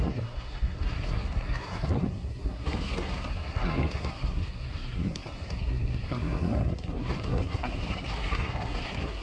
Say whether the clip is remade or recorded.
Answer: remade